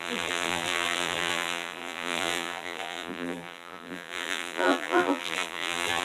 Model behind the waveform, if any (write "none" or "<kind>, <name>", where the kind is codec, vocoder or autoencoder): vocoder, BigVGAN v2